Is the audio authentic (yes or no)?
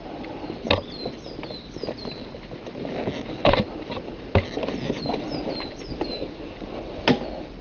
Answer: yes